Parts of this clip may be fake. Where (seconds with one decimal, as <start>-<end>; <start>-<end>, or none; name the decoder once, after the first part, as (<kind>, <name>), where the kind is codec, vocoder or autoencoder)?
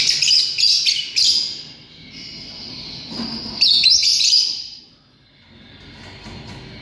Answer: 4.1-4.8 (vocoder, BigVGAN v2)